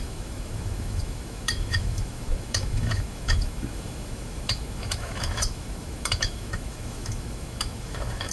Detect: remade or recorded remade